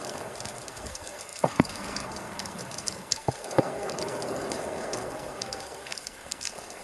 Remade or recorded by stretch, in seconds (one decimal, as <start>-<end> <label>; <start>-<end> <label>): 0.0-6.8 remade